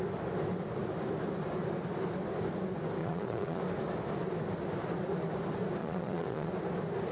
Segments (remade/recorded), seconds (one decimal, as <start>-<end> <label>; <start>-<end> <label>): 0.0-3.0 recorded; 3.0-3.6 remade; 3.6-5.8 recorded; 5.8-6.5 remade; 6.5-7.1 recorded